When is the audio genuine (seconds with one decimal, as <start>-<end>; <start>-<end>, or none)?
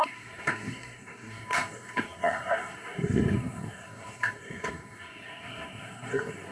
none